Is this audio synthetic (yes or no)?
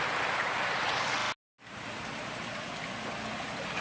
no